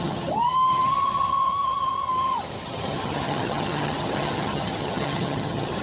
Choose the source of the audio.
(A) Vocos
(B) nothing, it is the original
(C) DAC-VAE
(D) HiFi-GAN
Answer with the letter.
D